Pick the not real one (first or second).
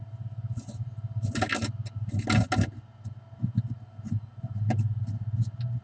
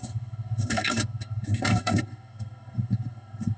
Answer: second